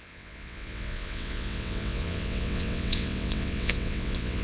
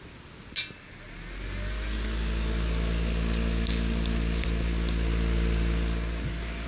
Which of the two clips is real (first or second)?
second